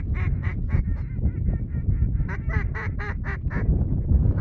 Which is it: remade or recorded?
recorded